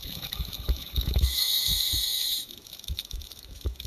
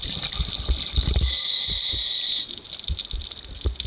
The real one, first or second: second